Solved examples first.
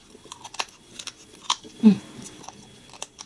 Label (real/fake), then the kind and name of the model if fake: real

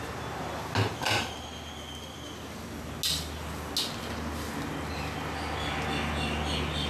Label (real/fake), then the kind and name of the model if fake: real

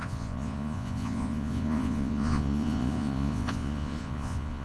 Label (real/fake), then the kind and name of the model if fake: fake, vocoder, Vocos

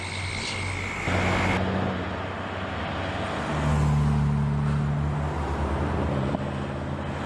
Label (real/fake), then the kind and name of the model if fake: real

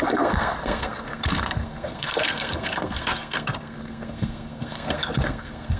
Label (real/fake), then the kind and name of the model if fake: fake, codec, SNAC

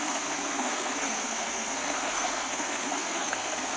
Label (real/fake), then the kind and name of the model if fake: fake, codec, SNAC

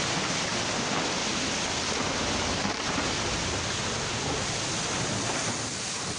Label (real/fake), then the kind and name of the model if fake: real